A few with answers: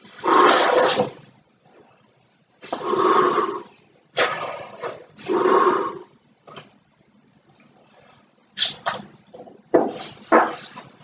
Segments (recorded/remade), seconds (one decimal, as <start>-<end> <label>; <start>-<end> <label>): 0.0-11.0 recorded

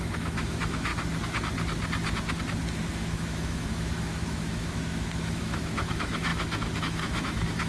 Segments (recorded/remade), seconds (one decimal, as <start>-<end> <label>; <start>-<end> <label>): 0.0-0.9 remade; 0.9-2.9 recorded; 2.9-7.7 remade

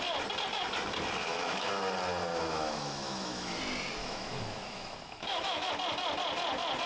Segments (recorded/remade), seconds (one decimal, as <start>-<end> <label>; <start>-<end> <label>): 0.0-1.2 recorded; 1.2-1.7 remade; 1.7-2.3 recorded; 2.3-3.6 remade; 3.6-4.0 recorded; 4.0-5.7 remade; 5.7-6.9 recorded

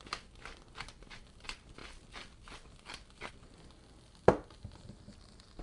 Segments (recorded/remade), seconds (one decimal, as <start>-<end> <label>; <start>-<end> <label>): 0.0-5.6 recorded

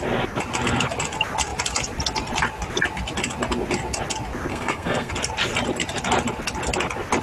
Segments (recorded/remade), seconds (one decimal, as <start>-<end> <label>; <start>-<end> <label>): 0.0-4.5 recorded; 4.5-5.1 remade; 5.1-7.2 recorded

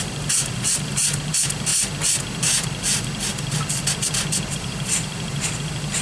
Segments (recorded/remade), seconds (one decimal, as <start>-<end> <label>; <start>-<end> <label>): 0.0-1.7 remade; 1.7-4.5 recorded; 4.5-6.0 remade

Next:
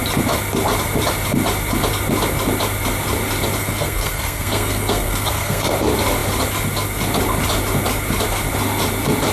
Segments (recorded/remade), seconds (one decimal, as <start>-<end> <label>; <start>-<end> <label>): 0.0-3.6 recorded; 3.6-5.7 remade; 5.7-9.3 recorded

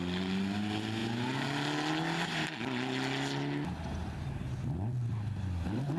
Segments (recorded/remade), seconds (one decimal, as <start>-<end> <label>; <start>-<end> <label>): 0.0-6.0 recorded